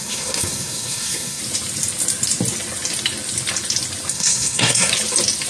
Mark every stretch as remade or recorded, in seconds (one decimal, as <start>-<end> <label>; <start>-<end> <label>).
0.0-1.4 remade; 1.4-4.1 recorded; 4.1-4.9 remade; 4.9-5.5 recorded

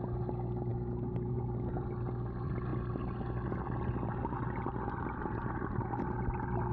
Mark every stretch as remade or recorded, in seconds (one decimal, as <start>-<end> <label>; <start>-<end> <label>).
0.0-6.7 recorded

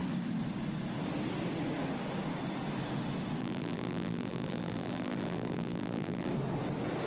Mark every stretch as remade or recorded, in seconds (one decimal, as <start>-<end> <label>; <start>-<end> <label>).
0.0-3.4 recorded; 3.4-6.3 remade; 6.3-7.1 recorded

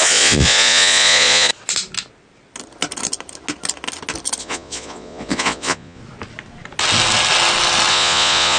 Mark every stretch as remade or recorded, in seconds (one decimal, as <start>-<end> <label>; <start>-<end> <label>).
0.0-1.5 remade; 1.5-4.4 recorded; 4.4-6.0 remade; 6.0-7.9 recorded; 7.9-8.6 remade

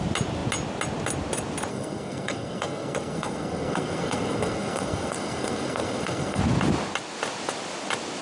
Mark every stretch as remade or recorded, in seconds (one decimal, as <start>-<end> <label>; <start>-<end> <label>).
0.0-1.7 recorded; 1.7-6.4 remade; 6.4-8.2 recorded

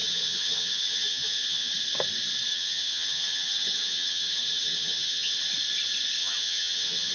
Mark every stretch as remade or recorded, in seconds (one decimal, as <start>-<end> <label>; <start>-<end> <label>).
0.0-1.7 remade; 1.7-2.5 recorded; 2.5-5.4 remade; 5.4-6.2 recorded; 6.2-7.1 remade

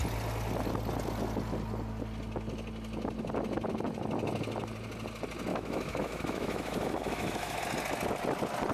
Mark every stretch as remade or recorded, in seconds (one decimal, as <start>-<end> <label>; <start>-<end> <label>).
0.0-5.5 recorded; 5.5-7.6 remade; 7.6-8.7 recorded

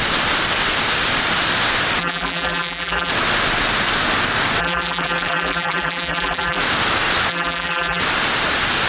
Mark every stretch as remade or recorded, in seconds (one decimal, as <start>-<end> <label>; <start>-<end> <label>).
0.0-2.0 recorded; 2.0-3.1 remade; 3.1-4.6 recorded; 4.6-6.6 remade; 6.6-7.3 recorded; 7.3-8.0 remade; 8.0-8.9 recorded